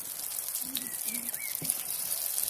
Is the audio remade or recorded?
remade